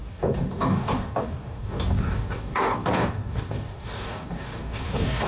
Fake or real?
fake